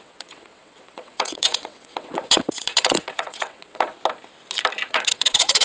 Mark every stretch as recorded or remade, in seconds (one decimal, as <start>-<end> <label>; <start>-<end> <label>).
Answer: 0.0-3.9 remade; 3.9-4.9 recorded; 4.9-5.6 remade

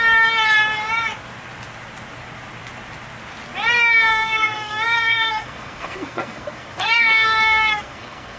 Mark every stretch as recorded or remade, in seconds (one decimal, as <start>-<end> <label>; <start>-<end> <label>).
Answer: 0.0-4.1 recorded; 4.1-8.4 remade